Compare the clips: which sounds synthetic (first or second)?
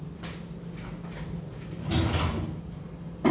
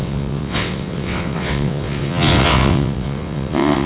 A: second